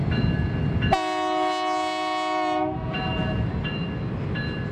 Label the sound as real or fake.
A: real